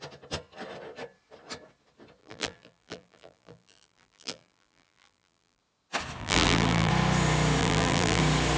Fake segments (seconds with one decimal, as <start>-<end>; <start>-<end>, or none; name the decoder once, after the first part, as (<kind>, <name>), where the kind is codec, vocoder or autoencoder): 2.2-5.6 (vocoder, BigVGAN v2); 6.2-6.9; 7.6-8.2